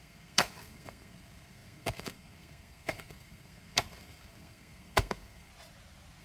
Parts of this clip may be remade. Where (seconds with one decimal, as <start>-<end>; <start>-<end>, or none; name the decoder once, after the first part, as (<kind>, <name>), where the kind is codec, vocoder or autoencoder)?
0.0-5.5 (codec, SNAC)